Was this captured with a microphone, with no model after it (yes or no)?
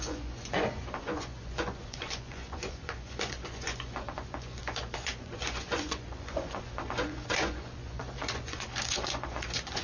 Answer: no